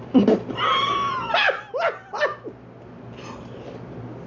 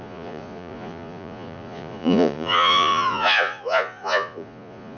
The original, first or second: first